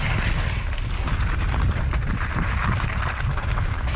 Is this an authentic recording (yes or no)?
yes